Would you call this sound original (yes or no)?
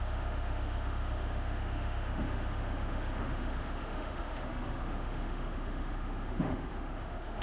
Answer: no